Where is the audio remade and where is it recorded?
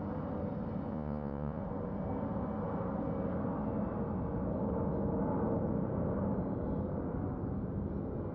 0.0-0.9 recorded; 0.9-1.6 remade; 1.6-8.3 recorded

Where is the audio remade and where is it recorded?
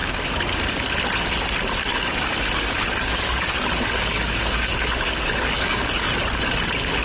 0.0-1.9 recorded; 1.9-6.1 remade; 6.1-7.0 recorded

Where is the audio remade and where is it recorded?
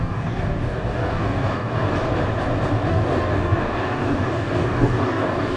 0.0-1.9 remade; 1.9-2.9 recorded; 2.9-5.6 remade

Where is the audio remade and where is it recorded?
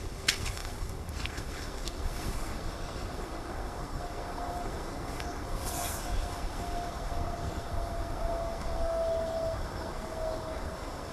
0.0-11.1 remade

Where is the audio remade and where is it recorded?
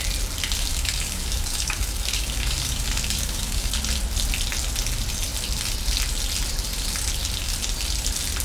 0.0-0.7 recorded; 0.7-3.7 remade; 3.7-8.4 recorded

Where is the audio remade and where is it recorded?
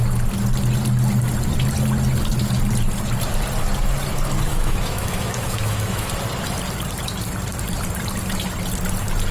0.0-4.5 recorded; 4.5-6.1 remade; 6.1-9.3 recorded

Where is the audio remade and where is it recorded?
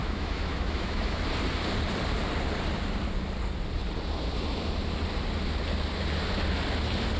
0.0-1.2 remade; 1.2-7.2 recorded